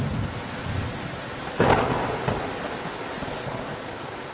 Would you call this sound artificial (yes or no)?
no